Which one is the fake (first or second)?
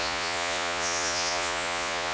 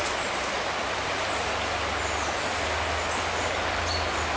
first